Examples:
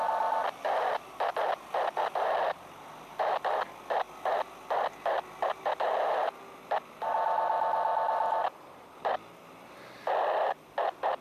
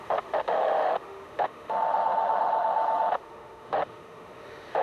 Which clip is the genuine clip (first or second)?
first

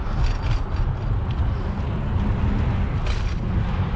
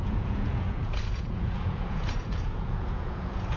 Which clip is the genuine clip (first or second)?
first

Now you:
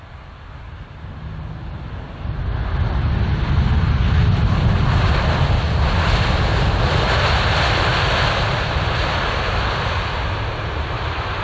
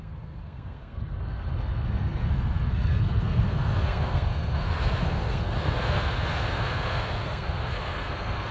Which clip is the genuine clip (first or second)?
first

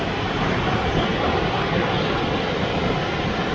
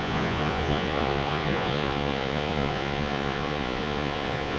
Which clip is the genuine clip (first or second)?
first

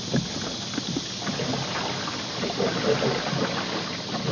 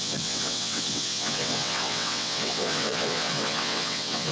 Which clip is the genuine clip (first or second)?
first